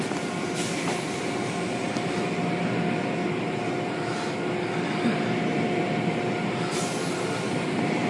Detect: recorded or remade recorded